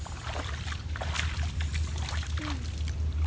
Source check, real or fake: fake